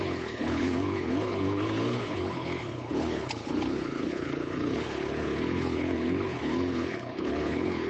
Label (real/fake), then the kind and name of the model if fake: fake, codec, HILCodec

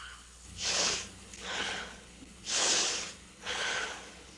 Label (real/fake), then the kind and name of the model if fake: fake, codec, HILCodec